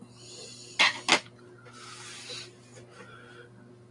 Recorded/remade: recorded